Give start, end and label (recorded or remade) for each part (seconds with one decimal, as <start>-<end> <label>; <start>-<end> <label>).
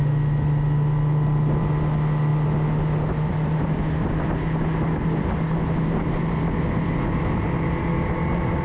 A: 0.0-8.6 recorded